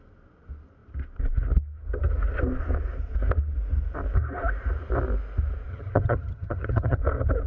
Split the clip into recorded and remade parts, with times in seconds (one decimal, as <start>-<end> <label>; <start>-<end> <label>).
0.0-5.7 recorded; 5.7-7.0 remade; 7.0-7.5 recorded

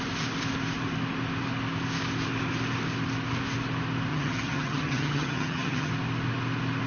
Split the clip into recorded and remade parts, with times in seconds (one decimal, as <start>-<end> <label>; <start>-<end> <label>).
0.0-4.1 recorded; 4.1-5.9 remade; 5.9-6.9 recorded

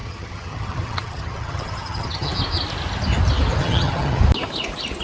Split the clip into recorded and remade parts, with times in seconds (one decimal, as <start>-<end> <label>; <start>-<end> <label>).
0.0-2.3 remade; 2.3-3.6 recorded; 3.6-4.2 remade; 4.2-5.0 recorded